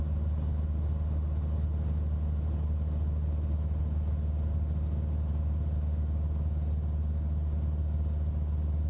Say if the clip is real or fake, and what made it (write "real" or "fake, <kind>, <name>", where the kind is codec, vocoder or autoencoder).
real